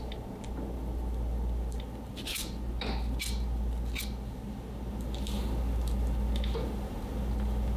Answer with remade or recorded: recorded